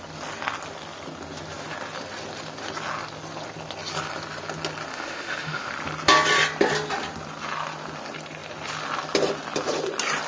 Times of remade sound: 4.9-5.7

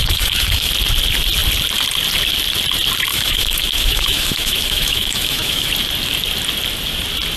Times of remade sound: 0.0-0.7; 3.1-5.7

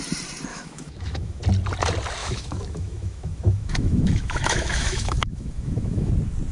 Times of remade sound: 0.5-1.4; 2.2-6.1

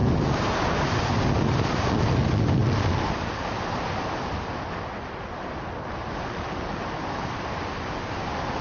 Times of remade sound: none

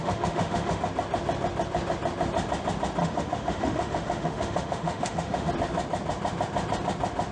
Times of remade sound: 0.0-0.8; 3.0-5.5

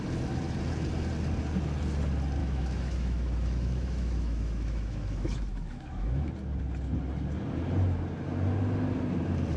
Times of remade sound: 2.4-6.3

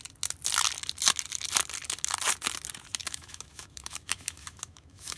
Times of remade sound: 3.0-5.2